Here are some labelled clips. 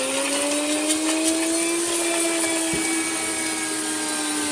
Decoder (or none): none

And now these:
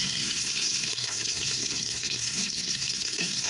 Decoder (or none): codec, SNAC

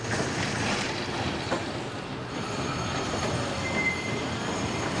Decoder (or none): none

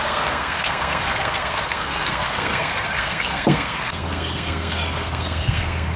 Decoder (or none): codec, SNAC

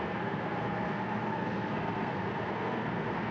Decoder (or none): codec, SNAC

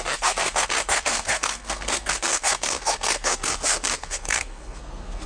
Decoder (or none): codec, SNAC